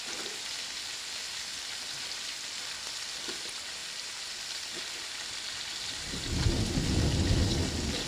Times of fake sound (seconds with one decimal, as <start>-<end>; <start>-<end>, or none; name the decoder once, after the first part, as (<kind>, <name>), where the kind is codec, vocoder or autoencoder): none